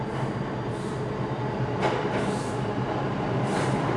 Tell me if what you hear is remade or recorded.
recorded